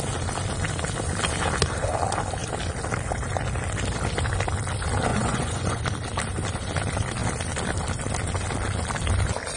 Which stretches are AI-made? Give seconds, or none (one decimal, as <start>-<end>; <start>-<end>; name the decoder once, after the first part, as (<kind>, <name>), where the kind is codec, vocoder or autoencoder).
5.1-5.8 (vocoder, Vocos)

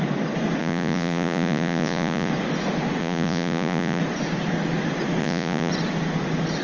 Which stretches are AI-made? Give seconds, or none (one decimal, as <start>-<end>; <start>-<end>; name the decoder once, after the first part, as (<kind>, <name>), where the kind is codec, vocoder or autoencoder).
0.6-2.3 (vocoder, Vocos); 3.0-4.0; 5.2-5.7

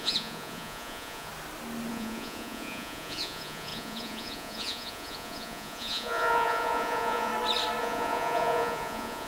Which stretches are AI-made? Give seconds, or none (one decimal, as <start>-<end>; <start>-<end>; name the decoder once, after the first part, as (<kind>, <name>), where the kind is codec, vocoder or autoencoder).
0.0-1.3 (vocoder, Vocos); 1.9-7.3; 7.8-9.3